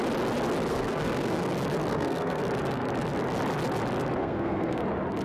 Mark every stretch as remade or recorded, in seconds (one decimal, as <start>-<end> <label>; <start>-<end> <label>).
0.0-0.7 recorded; 0.7-1.5 remade; 1.5-1.9 recorded; 1.9-2.4 remade; 2.4-4.2 recorded; 4.2-4.8 remade; 4.8-5.2 recorded